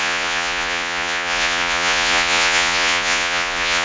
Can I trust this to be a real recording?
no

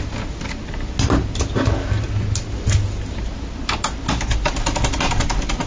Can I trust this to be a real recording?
yes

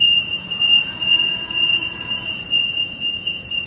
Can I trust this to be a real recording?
no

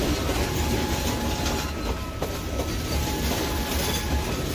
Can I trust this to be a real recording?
yes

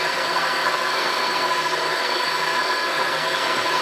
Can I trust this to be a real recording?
no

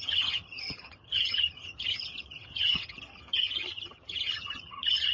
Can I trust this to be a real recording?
no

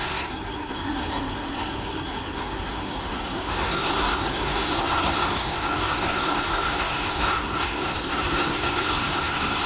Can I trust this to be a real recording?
no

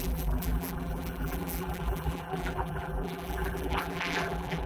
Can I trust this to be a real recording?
no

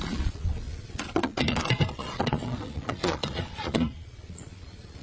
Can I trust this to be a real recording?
no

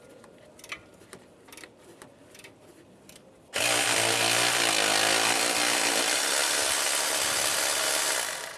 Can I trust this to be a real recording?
yes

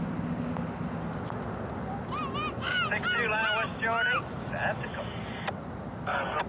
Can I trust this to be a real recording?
yes